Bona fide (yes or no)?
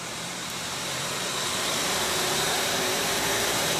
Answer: no